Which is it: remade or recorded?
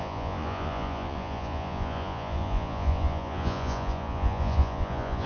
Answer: remade